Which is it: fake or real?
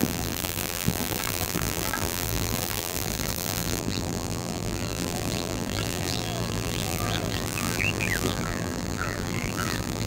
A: fake